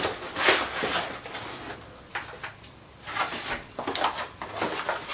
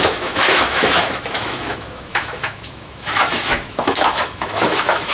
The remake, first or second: second